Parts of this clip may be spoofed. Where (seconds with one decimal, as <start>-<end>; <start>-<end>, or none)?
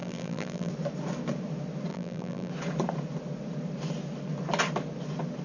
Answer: 0.0-0.7; 1.9-2.5